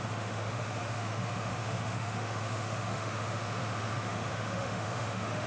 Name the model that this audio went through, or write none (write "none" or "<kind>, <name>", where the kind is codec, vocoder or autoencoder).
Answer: autoencoder, DAC-VAE